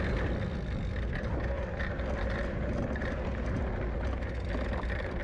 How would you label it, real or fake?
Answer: real